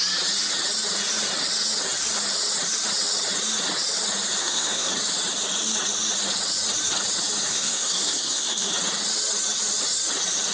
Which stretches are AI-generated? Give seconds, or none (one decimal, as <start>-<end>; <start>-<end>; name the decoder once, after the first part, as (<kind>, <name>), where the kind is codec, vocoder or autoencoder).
4.4-4.9 (codec, SNAC); 7.5-8.7